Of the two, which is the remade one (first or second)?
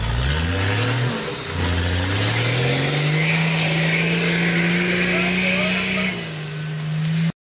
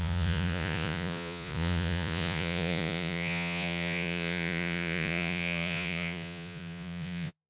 second